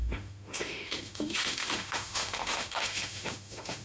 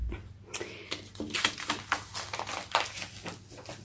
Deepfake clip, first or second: first